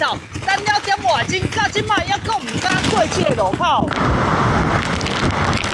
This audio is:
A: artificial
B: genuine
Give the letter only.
B